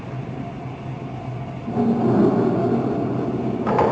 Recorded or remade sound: recorded